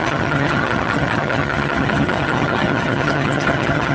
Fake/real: fake